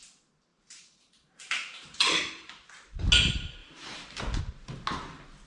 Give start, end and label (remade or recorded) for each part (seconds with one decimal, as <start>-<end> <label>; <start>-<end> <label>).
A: 0.0-0.5 recorded; 0.5-2.7 remade; 2.7-5.5 recorded